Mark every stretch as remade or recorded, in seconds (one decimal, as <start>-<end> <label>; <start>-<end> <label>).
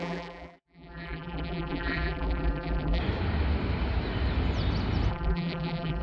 0.0-3.0 remade; 3.0-5.1 recorded; 5.1-6.0 remade